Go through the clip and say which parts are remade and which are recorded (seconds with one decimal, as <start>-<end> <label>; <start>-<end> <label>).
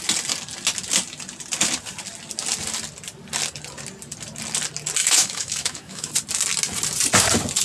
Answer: 0.0-5.0 recorded; 5.0-6.1 remade; 6.1-7.6 recorded